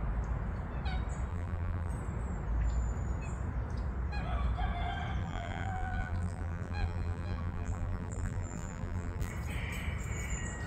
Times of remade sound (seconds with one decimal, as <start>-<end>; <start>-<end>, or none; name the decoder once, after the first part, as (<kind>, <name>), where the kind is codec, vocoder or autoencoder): 1.3-1.9 (vocoder, BigVGAN v2); 5.2-9.3